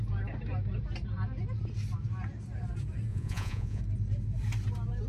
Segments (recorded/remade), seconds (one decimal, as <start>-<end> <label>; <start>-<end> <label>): 0.0-3.1 recorded; 3.1-3.8 remade; 3.8-5.1 recorded